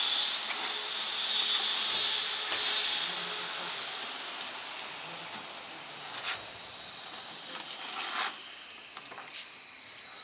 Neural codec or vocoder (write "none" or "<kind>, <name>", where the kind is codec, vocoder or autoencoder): none